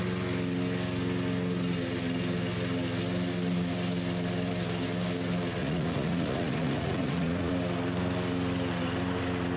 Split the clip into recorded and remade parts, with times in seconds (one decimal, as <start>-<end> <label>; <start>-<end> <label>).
0.0-5.6 recorded; 5.6-7.5 remade; 7.5-9.6 recorded